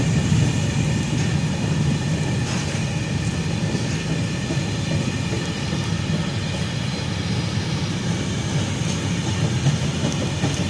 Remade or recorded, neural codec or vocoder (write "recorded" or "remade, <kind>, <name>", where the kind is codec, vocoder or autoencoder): recorded